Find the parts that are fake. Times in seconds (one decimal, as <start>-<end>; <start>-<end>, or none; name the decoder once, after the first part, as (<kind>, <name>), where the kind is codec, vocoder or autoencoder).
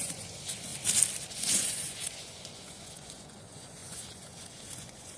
0.0-0.7 (vocoder, Vocos); 1.3-5.2